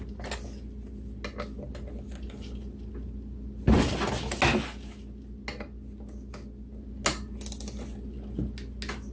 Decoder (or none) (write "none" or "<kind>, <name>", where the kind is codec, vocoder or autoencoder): none